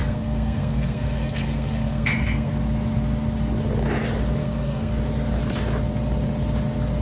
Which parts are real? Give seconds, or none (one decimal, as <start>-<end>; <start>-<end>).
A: 2.5-4.4; 4.9-7.0